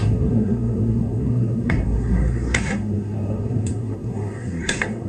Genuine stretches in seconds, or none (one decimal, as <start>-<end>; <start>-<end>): none